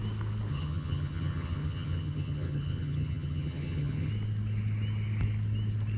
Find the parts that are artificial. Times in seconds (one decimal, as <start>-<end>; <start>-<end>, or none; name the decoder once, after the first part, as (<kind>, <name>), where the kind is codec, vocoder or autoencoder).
0.5-4.1 (vocoder, HiFi-GAN)